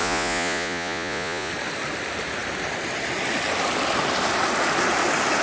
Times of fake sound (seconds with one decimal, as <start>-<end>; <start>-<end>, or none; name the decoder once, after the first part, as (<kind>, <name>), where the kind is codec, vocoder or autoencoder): 0.0-1.5 (vocoder, Vocos)